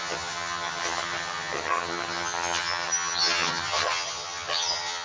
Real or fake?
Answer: fake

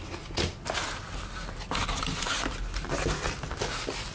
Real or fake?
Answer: real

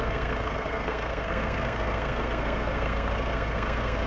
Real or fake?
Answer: fake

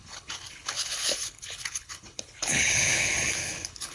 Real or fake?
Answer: fake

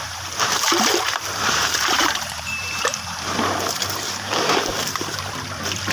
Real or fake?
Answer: fake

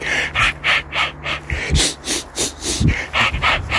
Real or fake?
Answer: real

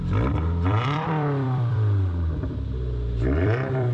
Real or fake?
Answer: fake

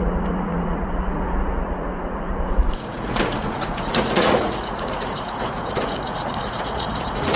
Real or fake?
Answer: fake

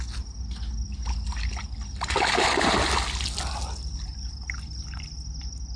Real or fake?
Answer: real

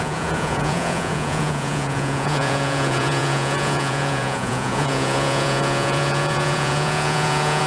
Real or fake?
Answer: fake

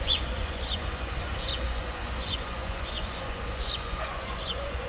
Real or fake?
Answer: fake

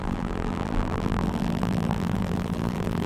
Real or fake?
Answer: fake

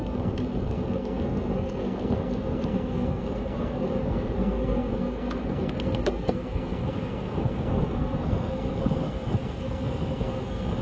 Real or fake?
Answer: fake